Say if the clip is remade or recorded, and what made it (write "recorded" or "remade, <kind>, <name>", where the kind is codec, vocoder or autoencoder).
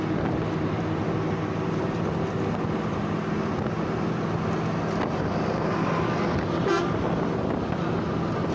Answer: recorded